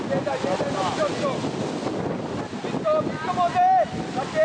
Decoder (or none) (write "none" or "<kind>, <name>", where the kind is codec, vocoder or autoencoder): none